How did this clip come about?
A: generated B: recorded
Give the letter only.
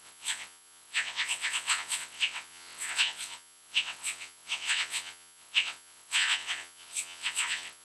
A